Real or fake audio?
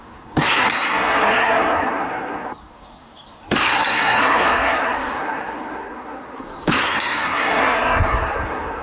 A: fake